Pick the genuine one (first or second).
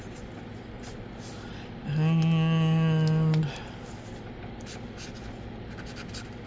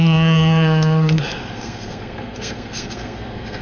first